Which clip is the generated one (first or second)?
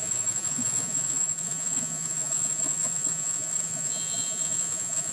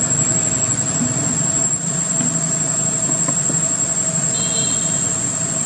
first